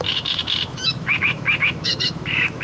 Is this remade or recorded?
remade